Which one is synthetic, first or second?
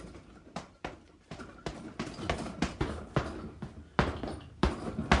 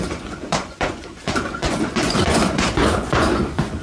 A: second